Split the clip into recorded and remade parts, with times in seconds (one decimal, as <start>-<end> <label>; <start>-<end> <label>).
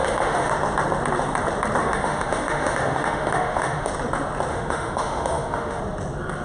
0.0-0.5 remade; 0.5-1.8 recorded; 1.8-3.9 remade; 3.9-4.5 recorded; 4.5-5.8 remade; 5.8-6.4 recorded